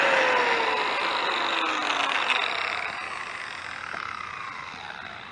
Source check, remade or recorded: recorded